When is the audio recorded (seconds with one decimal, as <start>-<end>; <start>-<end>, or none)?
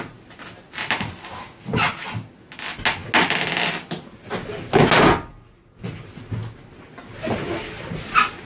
0.0-8.4